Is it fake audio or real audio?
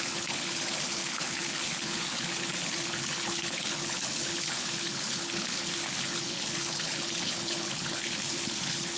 fake